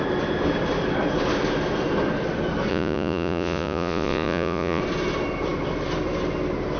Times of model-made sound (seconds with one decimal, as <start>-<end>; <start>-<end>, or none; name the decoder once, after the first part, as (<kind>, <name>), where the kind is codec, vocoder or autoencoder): 2.7-4.8 (vocoder, Vocos)